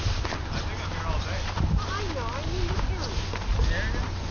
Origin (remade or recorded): recorded